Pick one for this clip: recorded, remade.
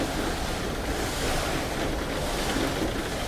recorded